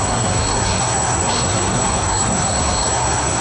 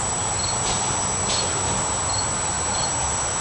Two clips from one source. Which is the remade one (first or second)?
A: first